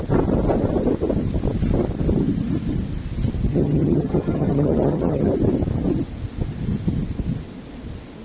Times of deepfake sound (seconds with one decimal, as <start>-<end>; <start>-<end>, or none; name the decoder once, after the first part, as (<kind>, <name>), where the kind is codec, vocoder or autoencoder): 3.5-5.3 (vocoder, HiFi-GAN)